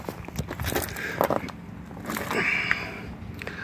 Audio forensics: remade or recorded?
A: recorded